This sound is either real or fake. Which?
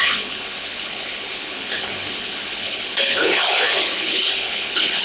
fake